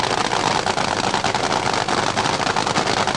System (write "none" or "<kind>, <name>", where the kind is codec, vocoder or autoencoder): none